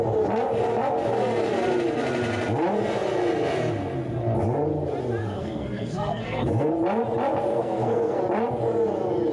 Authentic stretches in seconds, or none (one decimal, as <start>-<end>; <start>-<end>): 0.0-5.2; 6.7-7.5; 8.2-9.3